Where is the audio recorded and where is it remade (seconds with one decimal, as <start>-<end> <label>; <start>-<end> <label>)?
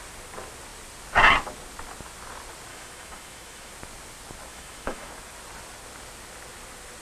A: 0.0-2.7 recorded; 2.7-3.7 remade; 3.7-4.5 recorded; 4.5-5.1 remade; 5.1-7.0 recorded